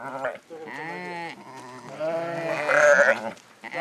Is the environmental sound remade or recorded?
recorded